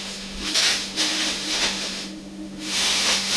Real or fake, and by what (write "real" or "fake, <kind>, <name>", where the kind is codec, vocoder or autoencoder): fake, autoencoder, DAC-VAE